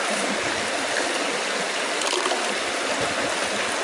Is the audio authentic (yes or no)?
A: yes